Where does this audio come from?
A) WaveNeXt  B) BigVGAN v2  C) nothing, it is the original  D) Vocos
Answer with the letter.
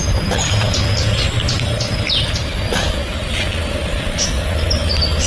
C